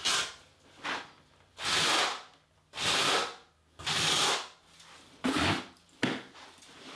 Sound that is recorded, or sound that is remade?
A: recorded